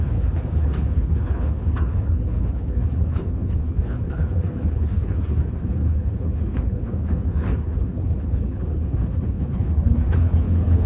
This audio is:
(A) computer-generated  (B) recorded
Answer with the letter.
A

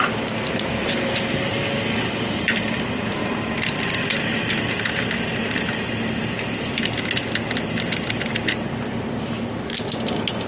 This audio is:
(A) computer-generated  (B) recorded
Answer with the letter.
B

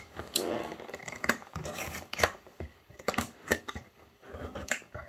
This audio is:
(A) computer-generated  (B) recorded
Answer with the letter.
A